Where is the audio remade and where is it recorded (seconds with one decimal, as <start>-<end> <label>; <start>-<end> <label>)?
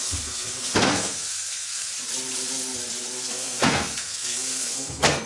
0.0-1.9 remade; 1.9-3.3 recorded; 3.3-5.3 remade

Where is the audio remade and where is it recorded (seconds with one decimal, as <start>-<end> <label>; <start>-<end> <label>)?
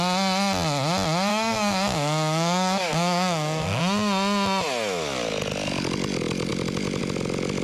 0.0-1.3 recorded; 1.3-3.8 remade; 3.8-7.6 recorded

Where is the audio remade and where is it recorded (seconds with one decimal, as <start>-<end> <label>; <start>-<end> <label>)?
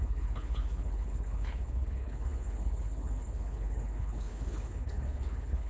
0.0-5.7 remade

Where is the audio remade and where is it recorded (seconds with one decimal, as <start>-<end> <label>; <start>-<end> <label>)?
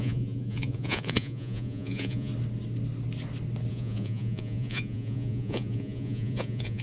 0.0-2.3 remade; 2.3-3.7 recorded; 3.7-6.8 remade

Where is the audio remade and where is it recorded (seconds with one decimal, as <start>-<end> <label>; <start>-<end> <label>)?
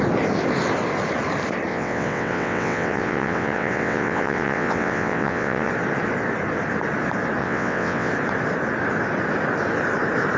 0.0-1.7 recorded; 1.7-5.7 remade; 5.7-7.4 recorded; 7.4-8.1 remade; 8.1-10.4 recorded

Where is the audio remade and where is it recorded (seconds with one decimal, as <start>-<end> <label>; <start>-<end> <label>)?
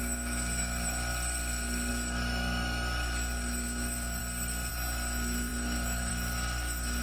0.0-1.1 remade; 1.1-1.9 recorded; 1.9-4.2 remade; 4.2-4.7 recorded; 4.7-7.0 remade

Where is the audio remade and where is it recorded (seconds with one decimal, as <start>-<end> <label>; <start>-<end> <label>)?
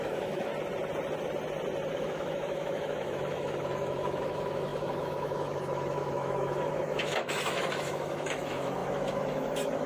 0.0-0.5 remade; 0.5-1.9 recorded; 1.9-9.9 remade